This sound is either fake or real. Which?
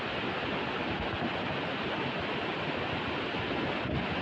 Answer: real